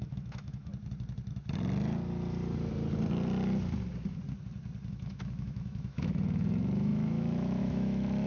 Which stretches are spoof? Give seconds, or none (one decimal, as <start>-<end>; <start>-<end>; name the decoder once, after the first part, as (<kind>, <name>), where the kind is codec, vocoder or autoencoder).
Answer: 0.0-0.7 (autoencoder, DAC-VAE); 4.9-8.3

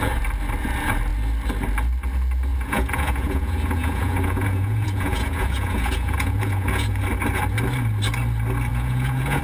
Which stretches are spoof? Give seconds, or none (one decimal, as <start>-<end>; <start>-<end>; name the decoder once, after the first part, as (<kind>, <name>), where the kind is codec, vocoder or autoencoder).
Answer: 2.5-7.0 (vocoder, Vocos); 8.7-9.4

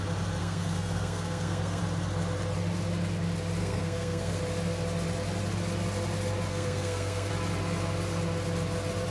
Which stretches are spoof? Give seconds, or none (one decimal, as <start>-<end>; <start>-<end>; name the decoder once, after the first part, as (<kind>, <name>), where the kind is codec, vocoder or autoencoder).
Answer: 0.4-1.8 (codec, SNAC); 3.6-4.4; 6.5-7.3

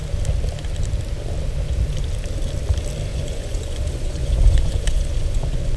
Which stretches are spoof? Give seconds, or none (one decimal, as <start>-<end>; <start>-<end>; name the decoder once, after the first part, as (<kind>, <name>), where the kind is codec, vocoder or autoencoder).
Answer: 3.1-5.8 (vocoder, Vocos)

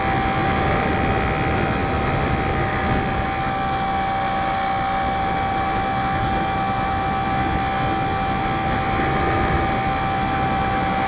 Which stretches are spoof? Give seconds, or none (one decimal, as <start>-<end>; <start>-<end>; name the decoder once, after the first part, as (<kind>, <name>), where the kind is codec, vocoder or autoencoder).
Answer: none